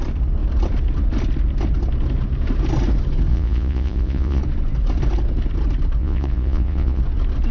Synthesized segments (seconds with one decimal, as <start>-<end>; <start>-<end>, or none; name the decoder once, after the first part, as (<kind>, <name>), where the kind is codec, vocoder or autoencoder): 3.3-4.4 (vocoder, Vocos); 6.0-7.0